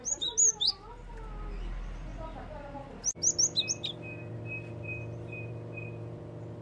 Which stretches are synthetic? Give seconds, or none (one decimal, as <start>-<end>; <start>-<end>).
none